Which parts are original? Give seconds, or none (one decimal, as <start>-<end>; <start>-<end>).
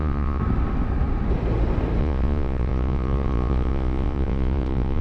0.4-2.0